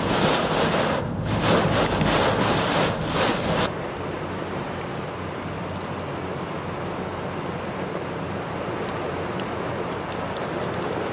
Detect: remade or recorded recorded